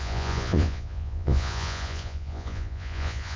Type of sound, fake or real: fake